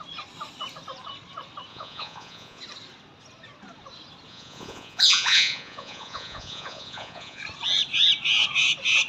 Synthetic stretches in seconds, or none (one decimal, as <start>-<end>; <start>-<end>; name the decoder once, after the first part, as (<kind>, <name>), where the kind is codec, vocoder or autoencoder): 1.7-2.6 (vocoder, Vocos); 4.3-7.4